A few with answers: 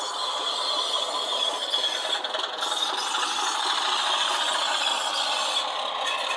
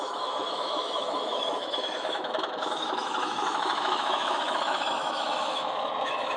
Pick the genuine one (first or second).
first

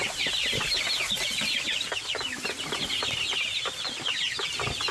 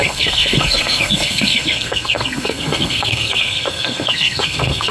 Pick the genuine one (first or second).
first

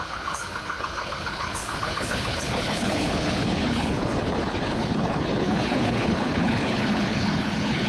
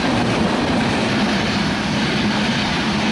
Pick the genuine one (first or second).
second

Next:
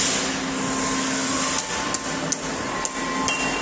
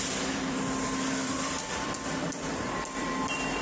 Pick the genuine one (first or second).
first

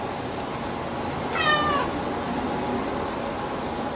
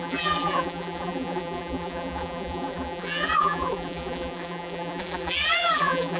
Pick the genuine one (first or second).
first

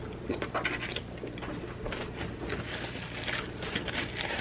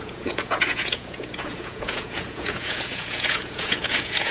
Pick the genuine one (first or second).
first